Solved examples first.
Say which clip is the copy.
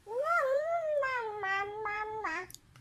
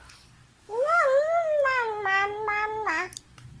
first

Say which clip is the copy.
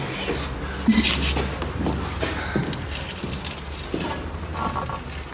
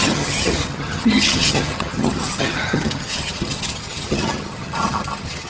second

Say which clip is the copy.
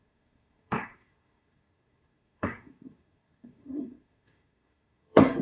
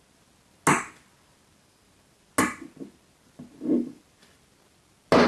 first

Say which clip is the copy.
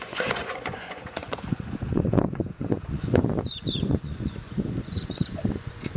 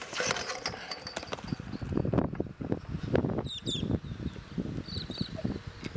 first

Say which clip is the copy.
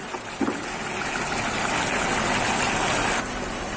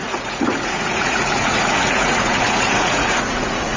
second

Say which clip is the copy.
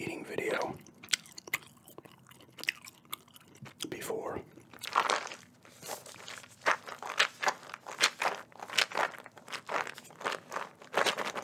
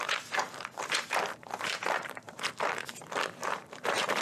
second